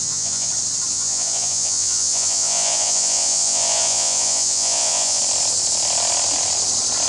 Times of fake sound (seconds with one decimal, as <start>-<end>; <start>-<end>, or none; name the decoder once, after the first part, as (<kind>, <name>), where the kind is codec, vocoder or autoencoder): 0.0-0.5 (vocoder, Vocos); 0.9-5.2